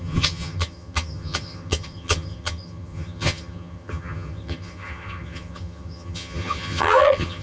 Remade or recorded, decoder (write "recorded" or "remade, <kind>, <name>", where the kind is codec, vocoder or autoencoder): remade, vocoder, HiFi-GAN